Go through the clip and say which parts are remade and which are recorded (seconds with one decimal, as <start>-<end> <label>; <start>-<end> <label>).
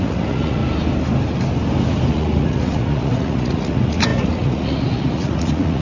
0.0-0.6 remade; 0.6-2.1 recorded; 2.1-5.8 remade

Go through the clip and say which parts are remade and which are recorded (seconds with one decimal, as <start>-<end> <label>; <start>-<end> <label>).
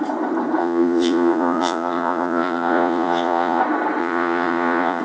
0.0-0.6 recorded; 0.6-3.6 remade; 3.6-4.0 recorded; 4.0-5.0 remade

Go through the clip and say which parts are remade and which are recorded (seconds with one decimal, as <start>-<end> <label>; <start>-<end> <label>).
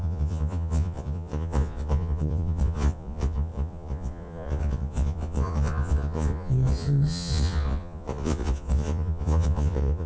0.0-10.1 remade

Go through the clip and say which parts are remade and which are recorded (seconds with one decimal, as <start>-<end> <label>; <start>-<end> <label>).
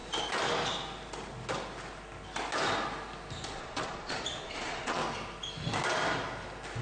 0.0-3.5 recorded; 3.5-5.0 remade; 5.0-6.8 recorded